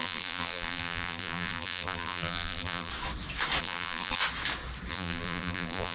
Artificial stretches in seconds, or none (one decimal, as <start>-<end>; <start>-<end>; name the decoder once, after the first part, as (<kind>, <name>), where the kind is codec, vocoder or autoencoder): 0.0-2.9 (vocoder, BigVGAN v2); 3.6-4.2; 4.9-5.9